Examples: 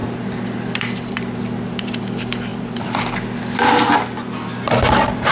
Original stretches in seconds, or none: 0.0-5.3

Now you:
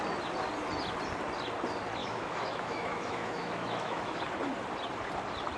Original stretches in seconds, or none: 0.0-2.0; 4.2-5.6

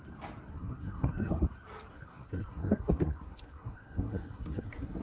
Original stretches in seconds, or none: 0.0-0.5; 1.4-1.9

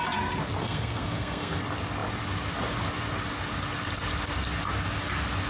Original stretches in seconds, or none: 0.0-0.6; 1.6-5.5

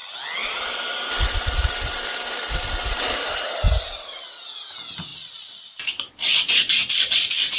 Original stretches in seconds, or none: 0.0-7.6